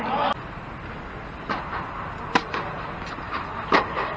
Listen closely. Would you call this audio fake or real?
real